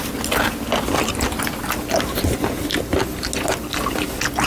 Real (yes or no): yes